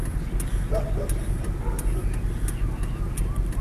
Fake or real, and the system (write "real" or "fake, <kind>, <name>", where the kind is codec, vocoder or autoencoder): real